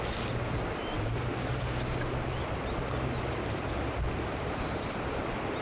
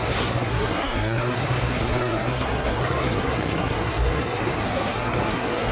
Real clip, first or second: first